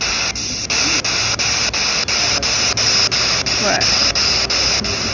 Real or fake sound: real